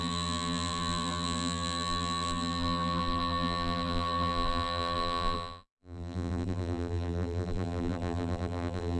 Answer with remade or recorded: remade